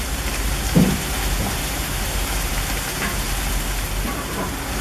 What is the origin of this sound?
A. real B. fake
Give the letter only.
B